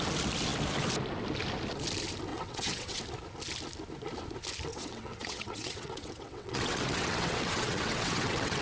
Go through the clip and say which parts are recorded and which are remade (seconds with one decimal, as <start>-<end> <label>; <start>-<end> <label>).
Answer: 0.0-2.3 recorded; 2.3-3.0 remade; 3.0-4.7 recorded; 4.7-8.6 remade